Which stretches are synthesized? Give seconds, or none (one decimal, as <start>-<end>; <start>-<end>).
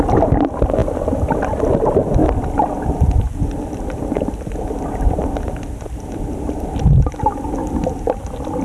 none